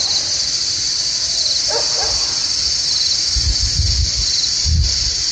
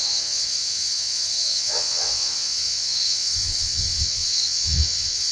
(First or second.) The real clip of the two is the first